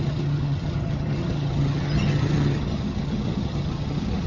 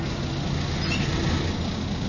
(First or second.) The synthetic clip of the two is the first